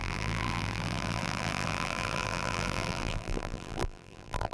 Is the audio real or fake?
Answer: fake